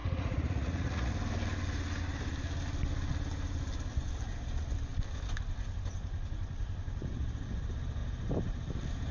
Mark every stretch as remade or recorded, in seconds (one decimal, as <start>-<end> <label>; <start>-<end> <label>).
0.0-1.1 remade; 1.1-9.1 recorded